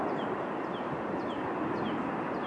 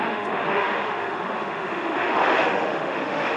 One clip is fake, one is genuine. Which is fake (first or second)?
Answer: second